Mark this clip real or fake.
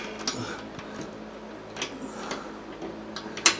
real